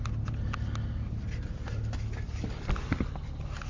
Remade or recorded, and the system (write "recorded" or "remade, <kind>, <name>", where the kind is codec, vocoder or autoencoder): recorded